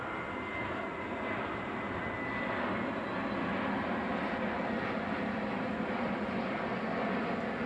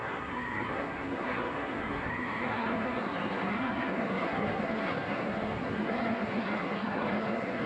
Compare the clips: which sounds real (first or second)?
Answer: first